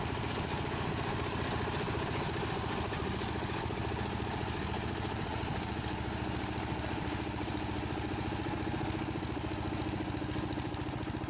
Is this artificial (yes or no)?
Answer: no